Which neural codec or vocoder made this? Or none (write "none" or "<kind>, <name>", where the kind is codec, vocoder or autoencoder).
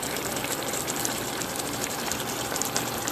vocoder, BigVGAN v2